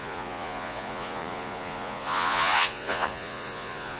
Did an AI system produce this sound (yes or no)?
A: yes